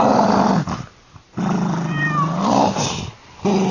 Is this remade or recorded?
recorded